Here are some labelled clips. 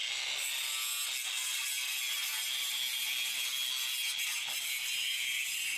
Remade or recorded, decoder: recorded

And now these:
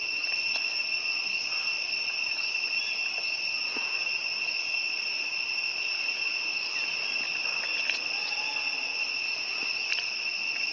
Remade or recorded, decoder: recorded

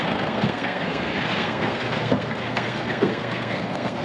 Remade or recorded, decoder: remade, codec, SNAC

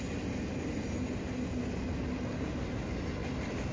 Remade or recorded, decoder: recorded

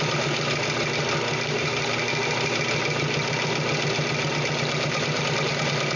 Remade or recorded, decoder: recorded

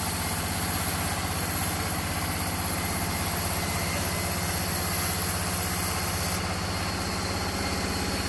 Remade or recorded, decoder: recorded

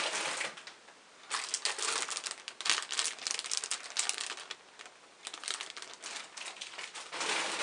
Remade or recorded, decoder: recorded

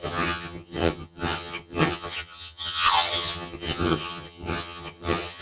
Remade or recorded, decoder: remade, vocoder, HiFi-GAN